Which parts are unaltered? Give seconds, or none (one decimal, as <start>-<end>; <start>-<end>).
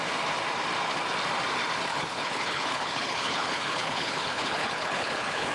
0.0-1.9